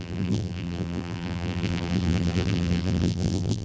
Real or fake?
fake